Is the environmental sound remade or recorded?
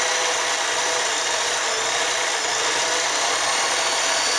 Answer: recorded